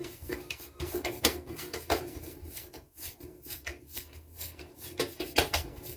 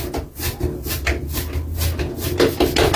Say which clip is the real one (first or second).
second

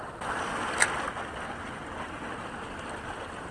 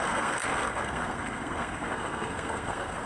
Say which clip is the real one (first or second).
first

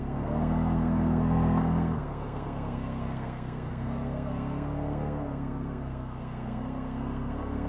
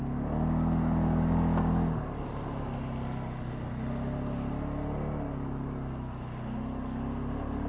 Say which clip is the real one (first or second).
second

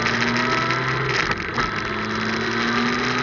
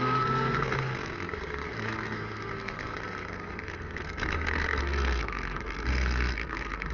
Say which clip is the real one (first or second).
first